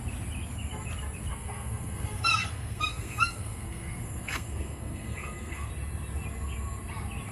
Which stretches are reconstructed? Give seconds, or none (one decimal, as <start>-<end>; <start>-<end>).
1.3-5.7